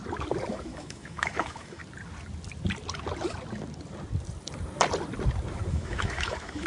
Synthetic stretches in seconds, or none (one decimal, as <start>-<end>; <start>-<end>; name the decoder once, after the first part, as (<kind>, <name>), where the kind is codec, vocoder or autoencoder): 0.5-1.8 (autoencoder, DAC-VAE); 5.7-6.7